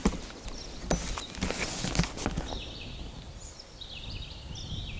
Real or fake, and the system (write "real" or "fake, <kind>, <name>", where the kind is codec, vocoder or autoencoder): real